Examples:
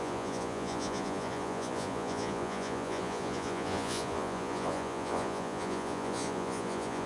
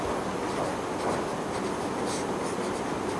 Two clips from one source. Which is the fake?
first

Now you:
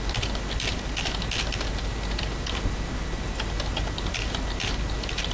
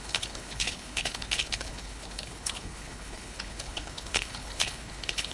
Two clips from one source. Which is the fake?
second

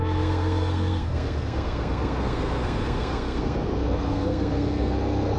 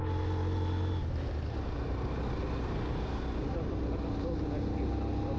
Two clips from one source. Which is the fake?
first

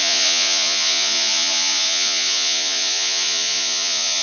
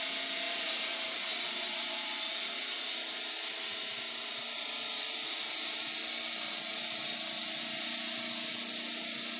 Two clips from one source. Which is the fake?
first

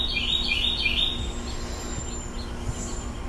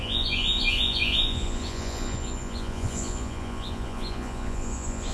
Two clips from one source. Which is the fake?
second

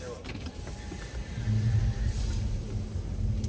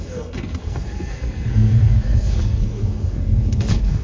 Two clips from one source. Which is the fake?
second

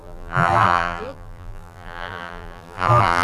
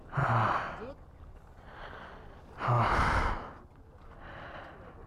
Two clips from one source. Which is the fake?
first